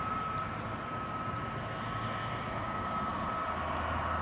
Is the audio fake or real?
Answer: real